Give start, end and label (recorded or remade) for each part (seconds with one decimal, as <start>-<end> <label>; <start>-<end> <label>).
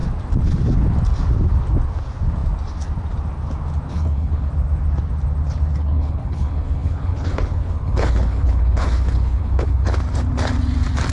0.0-3.9 recorded; 3.9-4.5 remade; 4.5-5.8 recorded; 5.8-9.9 remade; 9.9-11.1 recorded